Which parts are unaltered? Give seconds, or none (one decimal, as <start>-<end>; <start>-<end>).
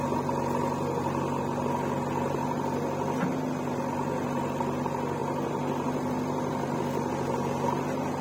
0.0-8.2